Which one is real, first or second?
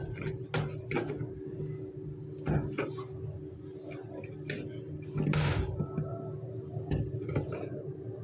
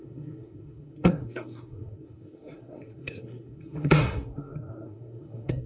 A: first